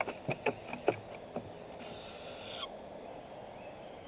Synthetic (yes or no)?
no